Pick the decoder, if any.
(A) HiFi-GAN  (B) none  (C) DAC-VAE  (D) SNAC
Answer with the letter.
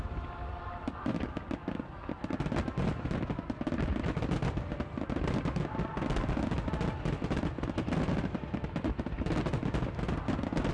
B